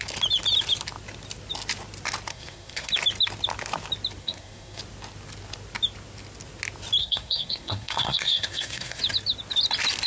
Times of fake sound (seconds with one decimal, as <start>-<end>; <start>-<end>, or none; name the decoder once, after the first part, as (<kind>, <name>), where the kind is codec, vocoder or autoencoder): 2.3-2.9 (codec, SNAC); 4.2-4.8; 7.0-9.0